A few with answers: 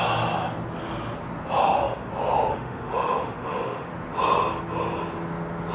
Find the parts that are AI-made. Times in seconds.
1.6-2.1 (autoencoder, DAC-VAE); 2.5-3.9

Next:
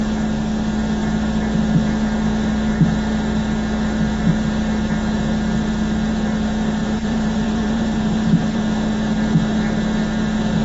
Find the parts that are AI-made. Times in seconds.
6.8-8.6 (vocoder, BigVGAN v2)

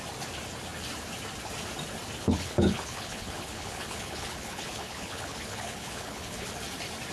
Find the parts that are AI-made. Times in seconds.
2.2-6.5 (codec, HILCodec)